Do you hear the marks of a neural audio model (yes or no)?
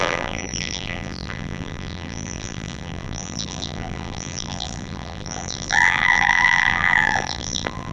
yes